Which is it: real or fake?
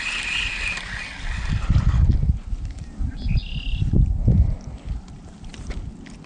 real